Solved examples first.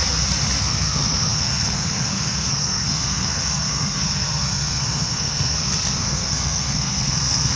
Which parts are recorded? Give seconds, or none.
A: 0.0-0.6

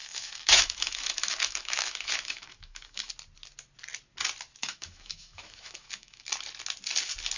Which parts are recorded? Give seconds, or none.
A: 3.1-4.6; 6.3-7.4

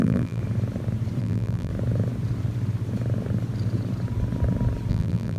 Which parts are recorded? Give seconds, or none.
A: 0.4-1.2; 1.7-4.9

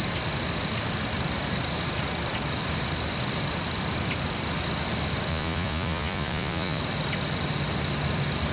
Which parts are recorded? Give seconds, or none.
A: 0.0-5.3; 6.8-8.5

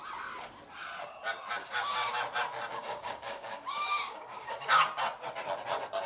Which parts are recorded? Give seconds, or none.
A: 0.0-1.6; 2.1-2.7; 4.7-6.1

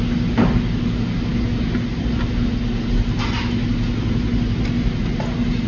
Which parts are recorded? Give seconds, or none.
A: 0.0-5.7

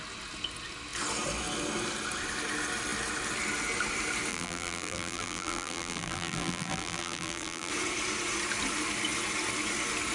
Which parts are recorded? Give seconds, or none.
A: 0.0-4.3; 7.7-10.1